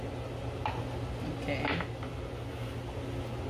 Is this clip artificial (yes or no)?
no